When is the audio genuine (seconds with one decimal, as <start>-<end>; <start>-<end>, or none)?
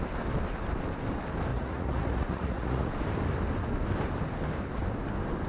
0.0-1.5; 2.9-5.5